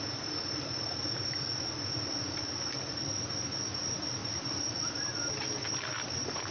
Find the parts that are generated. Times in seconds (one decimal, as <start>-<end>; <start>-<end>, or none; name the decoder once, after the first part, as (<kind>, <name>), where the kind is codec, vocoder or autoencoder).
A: none